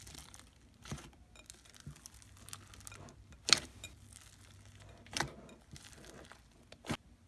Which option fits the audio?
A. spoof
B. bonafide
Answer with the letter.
B